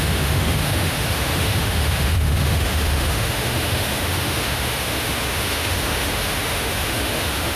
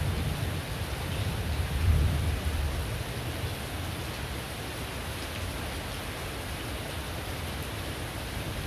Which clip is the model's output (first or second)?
first